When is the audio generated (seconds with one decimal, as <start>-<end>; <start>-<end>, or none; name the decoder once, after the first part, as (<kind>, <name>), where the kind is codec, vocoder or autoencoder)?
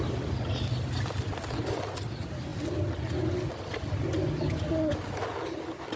none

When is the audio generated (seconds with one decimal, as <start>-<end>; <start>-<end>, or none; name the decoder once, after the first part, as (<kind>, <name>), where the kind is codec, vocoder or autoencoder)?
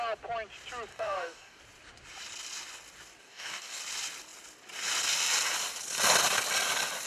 0.9-1.6 (codec, DAC); 3.2-3.8